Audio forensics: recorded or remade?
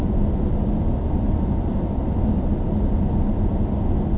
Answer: recorded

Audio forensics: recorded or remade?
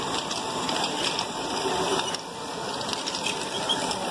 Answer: remade